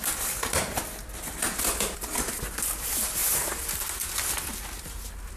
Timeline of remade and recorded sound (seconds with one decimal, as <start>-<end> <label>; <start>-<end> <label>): 0.0-5.4 recorded